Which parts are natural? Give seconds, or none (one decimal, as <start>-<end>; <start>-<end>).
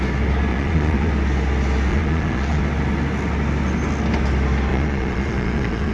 0.0-0.5; 1.1-1.9; 2.6-4.7